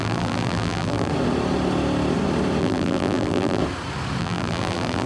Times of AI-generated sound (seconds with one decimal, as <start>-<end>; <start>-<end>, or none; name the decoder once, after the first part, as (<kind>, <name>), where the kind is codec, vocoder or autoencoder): 0.0-1.1 (vocoder, BigVGAN v2); 2.6-3.6; 4.2-5.1